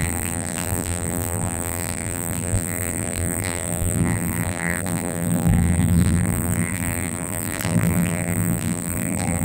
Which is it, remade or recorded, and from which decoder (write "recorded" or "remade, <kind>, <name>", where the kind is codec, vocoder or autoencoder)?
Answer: remade, vocoder, BigVGAN v2